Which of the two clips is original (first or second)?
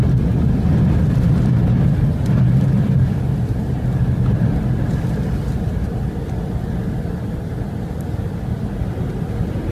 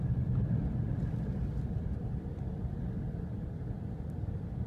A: first